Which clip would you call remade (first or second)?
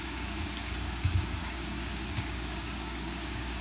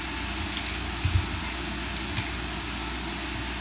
first